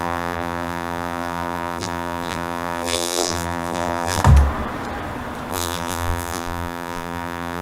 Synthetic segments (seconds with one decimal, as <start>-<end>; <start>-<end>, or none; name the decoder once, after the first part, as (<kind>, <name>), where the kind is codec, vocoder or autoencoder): 0.0-4.2 (vocoder, BigVGAN v2); 5.5-7.6